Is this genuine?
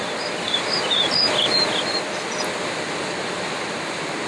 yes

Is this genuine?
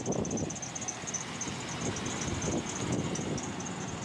yes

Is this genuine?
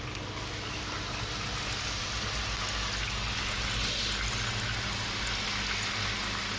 yes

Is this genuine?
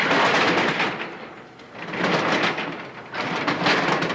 yes